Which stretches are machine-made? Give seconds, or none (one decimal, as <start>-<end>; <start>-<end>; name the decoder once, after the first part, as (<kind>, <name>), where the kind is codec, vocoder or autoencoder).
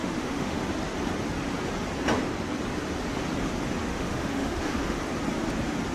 0.0-0.6 (autoencoder, DAC-VAE); 3.9-5.0